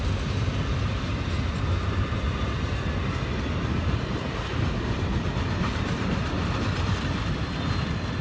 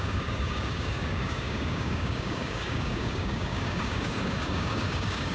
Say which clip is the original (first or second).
first